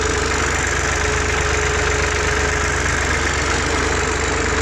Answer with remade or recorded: recorded